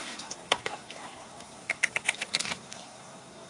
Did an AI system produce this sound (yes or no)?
yes